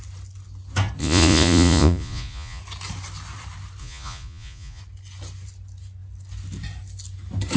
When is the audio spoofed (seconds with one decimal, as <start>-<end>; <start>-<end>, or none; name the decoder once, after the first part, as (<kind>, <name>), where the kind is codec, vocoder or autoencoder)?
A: 1.0-2.6 (vocoder, Vocos); 3.8-4.8